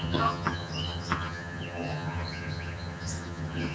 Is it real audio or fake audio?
fake